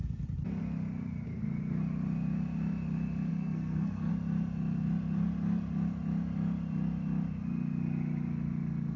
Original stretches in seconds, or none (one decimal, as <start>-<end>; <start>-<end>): 0.0-3.3; 4.1-9.0